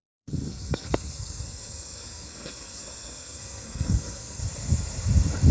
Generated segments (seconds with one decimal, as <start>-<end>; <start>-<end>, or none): 0.0-4.4